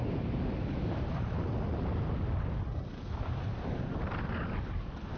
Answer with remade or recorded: recorded